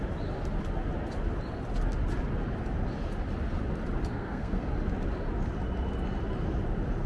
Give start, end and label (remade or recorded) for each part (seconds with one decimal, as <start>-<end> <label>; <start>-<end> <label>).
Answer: 0.0-4.1 recorded; 4.1-4.7 remade; 4.7-7.1 recorded